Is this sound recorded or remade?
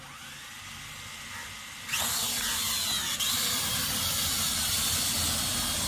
recorded